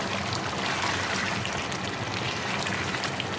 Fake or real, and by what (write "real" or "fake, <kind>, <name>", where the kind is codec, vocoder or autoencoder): real